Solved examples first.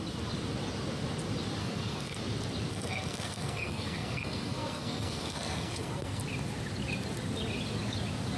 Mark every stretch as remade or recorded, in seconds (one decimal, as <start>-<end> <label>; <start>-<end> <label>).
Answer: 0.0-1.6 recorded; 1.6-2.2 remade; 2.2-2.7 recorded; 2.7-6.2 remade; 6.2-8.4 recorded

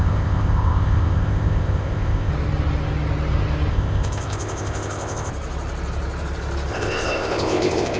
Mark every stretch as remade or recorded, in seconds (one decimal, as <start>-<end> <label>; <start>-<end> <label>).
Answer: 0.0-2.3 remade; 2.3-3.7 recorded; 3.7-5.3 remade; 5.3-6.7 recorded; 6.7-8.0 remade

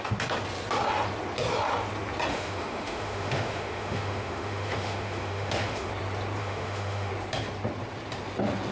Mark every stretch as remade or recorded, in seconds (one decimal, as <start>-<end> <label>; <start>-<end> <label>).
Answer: 0.0-2.3 recorded; 2.3-5.9 remade; 5.9-6.4 recorded; 6.4-7.1 remade; 7.1-8.7 recorded